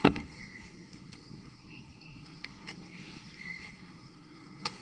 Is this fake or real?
fake